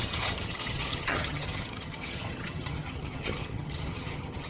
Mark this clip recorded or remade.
remade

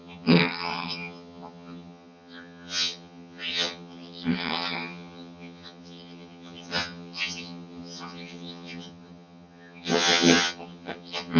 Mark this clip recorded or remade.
remade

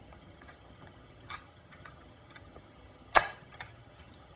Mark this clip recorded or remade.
remade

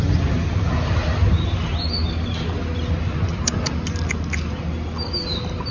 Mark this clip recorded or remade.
recorded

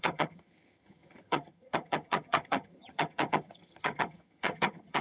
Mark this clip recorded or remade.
remade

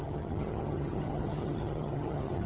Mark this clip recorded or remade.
remade